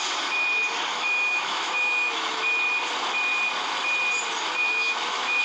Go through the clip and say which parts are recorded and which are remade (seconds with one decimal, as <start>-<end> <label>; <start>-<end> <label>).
0.0-0.9 recorded; 0.9-2.4 remade; 2.4-4.6 recorded; 4.6-5.4 remade